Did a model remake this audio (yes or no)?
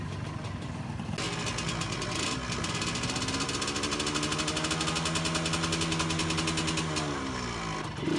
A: no